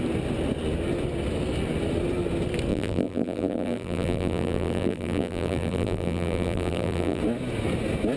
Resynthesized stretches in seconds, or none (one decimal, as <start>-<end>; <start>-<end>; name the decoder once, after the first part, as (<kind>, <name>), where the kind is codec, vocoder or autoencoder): 2.7-7.2 (vocoder, BigVGAN v2)